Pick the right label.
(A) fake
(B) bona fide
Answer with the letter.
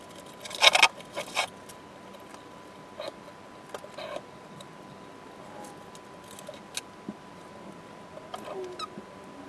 B